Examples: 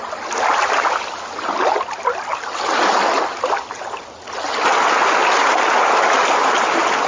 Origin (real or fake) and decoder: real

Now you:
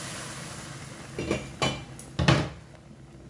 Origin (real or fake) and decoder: real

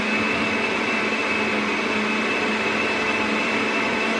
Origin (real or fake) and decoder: real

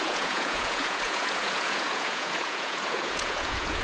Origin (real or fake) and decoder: fake, vocoder, Vocos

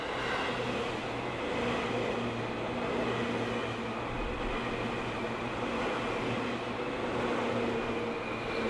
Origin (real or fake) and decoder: real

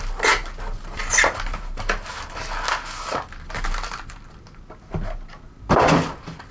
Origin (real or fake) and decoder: real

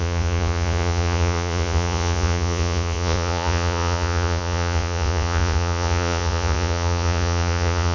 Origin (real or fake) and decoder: fake, vocoder, Vocos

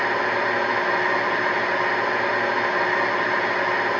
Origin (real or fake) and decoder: real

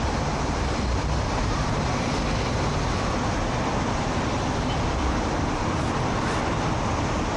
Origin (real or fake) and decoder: fake, vocoder, BigVGAN v2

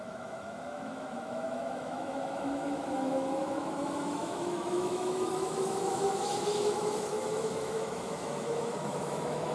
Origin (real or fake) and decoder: fake, autoencoder, DAC-VAE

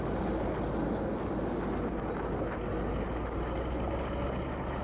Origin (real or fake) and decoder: real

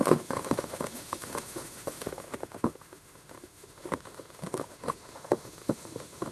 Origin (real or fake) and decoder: fake, autoencoder, DAC-VAE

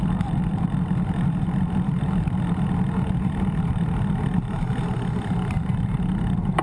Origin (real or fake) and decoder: real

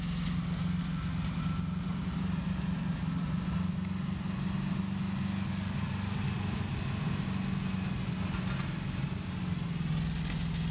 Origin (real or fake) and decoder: real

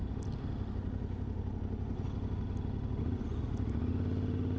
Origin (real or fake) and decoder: real